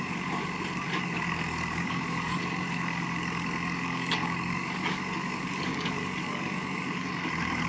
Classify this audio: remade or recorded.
remade